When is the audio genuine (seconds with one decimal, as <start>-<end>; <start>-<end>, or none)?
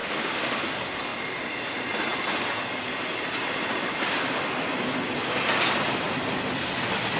0.6-7.2